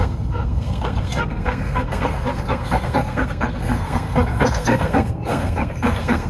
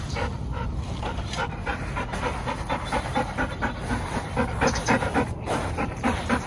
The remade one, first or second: first